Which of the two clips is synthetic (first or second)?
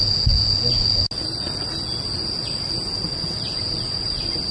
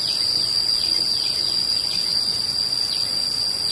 second